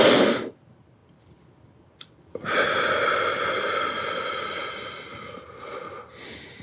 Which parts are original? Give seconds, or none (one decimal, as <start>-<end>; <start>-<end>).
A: 0.0-6.6